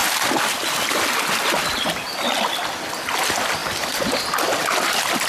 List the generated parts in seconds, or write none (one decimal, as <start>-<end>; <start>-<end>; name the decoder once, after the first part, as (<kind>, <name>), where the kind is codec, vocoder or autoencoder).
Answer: none